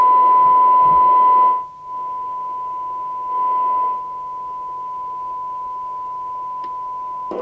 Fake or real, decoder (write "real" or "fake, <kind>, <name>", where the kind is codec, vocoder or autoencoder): real